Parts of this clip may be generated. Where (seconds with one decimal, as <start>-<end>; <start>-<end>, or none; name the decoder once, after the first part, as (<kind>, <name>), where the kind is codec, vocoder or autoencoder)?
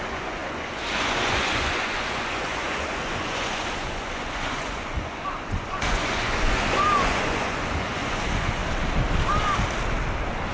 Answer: 0.0-8.6 (vocoder, Vocos)